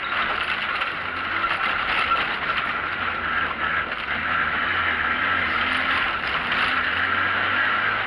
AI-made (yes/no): no